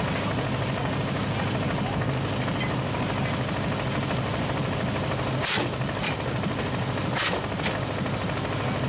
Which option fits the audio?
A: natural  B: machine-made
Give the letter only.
A